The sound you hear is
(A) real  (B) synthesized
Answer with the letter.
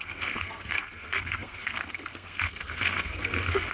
B